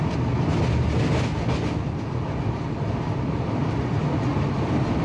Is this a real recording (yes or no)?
yes